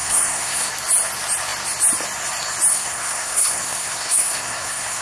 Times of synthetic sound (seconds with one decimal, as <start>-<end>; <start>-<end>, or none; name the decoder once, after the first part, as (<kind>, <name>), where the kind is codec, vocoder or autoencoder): 0.0-0.7 (codec, SNAC); 2.7-5.0